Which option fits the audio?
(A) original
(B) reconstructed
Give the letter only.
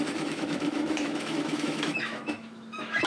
B